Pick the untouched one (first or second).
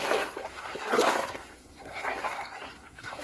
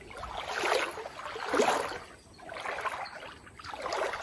second